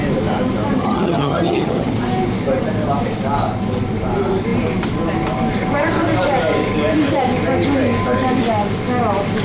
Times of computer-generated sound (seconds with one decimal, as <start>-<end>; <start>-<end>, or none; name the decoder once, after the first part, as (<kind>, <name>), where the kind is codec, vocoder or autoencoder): 0.8-1.9 (vocoder, HiFi-GAN)